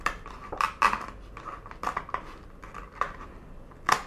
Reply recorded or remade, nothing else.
recorded